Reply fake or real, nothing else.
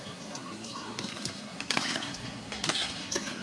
fake